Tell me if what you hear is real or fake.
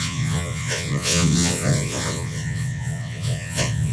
fake